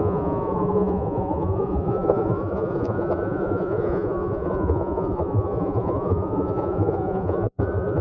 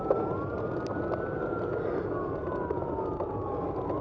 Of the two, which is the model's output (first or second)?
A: first